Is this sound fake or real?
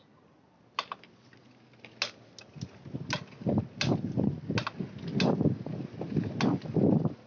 real